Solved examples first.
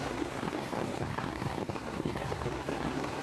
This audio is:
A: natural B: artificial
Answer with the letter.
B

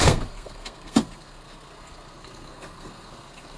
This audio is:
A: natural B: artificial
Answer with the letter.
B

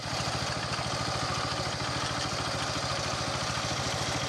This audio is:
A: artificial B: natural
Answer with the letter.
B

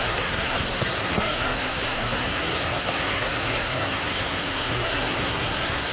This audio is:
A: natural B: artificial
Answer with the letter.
B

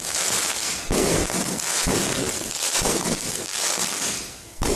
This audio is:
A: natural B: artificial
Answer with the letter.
B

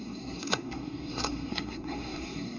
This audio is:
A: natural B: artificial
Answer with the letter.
B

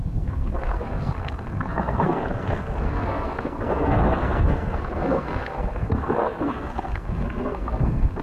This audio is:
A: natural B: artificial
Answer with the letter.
B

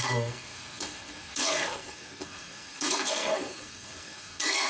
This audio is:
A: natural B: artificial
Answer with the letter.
B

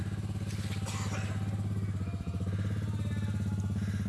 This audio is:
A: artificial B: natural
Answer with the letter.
B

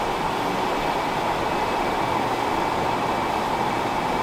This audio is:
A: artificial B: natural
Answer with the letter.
B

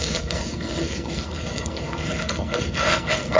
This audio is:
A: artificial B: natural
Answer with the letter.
A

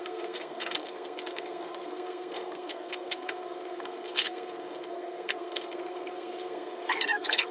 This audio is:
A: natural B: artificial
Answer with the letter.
B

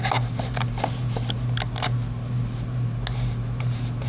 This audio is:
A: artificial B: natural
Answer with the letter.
B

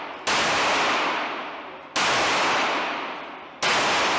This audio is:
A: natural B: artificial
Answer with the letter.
A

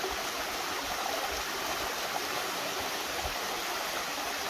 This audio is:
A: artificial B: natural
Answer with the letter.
B